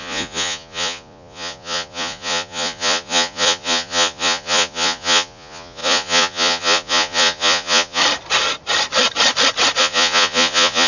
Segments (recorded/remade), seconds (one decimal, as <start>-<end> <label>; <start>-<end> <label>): 0.0-8.0 remade; 8.0-9.8 recorded; 9.8-10.9 remade